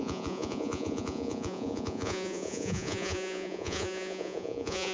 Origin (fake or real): fake